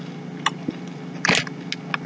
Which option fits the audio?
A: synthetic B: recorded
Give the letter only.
B